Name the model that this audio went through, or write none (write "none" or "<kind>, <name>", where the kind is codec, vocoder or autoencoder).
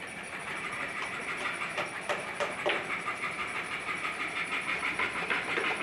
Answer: vocoder, BigVGAN v2